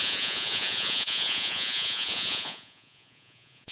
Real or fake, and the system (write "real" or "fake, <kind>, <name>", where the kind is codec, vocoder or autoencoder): fake, vocoder, Vocos